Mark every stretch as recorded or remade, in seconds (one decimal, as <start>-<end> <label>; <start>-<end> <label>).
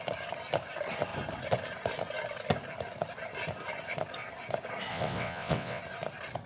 0.0-4.9 recorded; 4.9-5.8 remade; 5.8-6.5 recorded